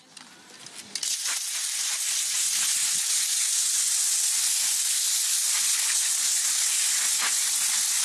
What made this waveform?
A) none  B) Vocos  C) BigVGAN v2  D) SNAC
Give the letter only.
A